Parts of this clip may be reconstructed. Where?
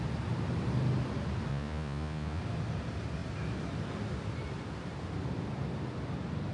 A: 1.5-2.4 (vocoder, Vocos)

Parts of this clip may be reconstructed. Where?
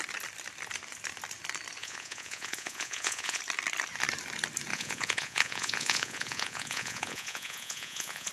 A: 1.8-3.4 (vocoder, Vocos); 4.7-8.3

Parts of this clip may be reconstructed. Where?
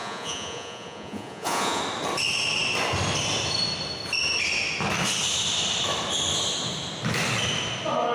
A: 0.0-1.8 (vocoder, Vocos)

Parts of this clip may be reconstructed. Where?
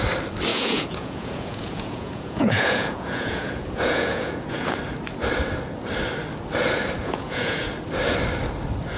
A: 0.5-4.8 (vocoder, Vocos); 7.0-7.7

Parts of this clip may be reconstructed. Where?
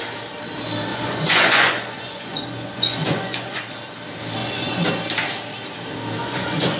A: 0.9-3.6 (vocoder, Vocos); 4.4-4.9; 6.2-6.8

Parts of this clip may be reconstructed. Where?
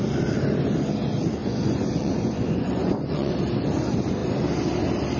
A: 1.4-3.3 (vocoder, Vocos)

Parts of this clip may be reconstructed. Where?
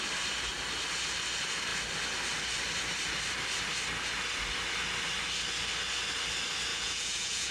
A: 6.7-7.5 (vocoder, Vocos)